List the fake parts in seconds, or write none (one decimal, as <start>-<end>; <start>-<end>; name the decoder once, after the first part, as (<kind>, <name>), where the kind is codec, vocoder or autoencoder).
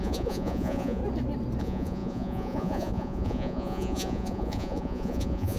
0.0-1.0 (vocoder, Vocos); 1.6-5.6